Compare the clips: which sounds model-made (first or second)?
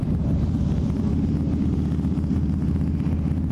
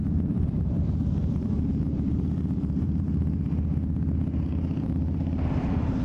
second